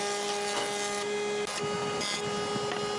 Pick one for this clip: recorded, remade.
recorded